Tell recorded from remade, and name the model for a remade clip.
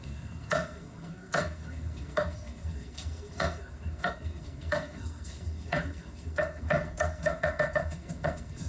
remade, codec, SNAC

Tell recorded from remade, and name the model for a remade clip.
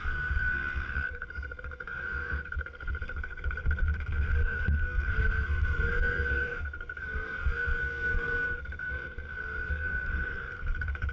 remade, codec, SNAC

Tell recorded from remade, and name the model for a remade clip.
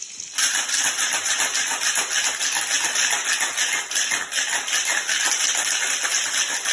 recorded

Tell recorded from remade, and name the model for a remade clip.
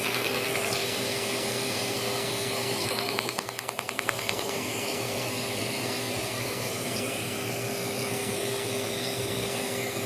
remade, codec, SNAC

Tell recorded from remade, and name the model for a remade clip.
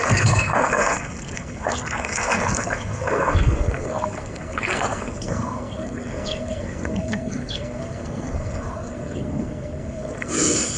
remade, codec, SNAC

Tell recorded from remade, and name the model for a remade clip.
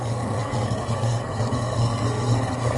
remade, codec, SNAC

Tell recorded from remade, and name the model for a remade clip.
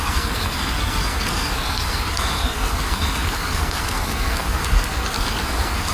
remade, codec, SNAC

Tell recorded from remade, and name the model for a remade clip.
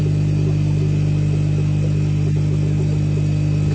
recorded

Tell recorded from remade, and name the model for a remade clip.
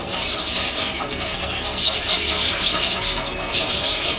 remade, codec, SNAC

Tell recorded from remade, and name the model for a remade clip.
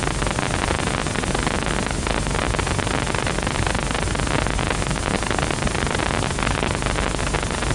recorded